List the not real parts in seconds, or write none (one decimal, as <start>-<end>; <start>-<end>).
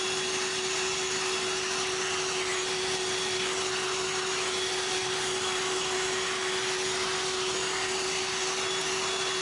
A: none